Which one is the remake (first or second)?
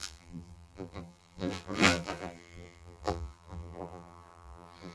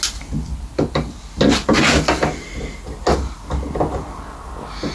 first